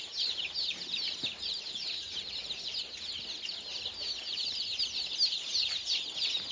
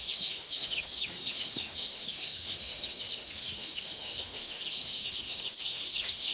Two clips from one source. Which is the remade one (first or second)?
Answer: second